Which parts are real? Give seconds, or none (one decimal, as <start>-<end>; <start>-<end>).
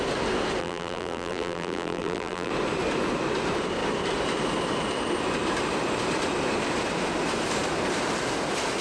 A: 0.0-0.6; 2.5-8.8